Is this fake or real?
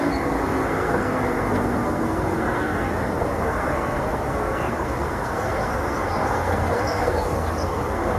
fake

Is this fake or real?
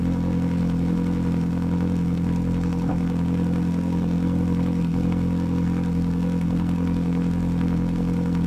fake